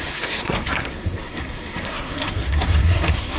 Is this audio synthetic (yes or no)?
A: yes